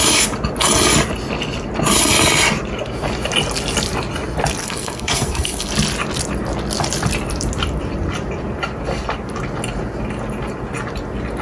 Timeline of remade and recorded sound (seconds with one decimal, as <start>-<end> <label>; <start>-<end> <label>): 0.0-4.6 recorded; 4.6-5.7 remade; 5.7-11.4 recorded